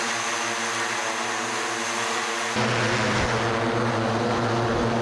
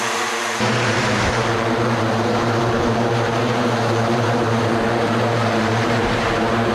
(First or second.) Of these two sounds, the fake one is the second